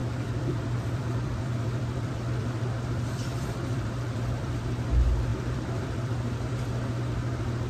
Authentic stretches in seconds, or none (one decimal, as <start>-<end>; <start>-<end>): 4.6-5.3; 6.6-7.7